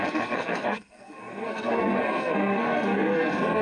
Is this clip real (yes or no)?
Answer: no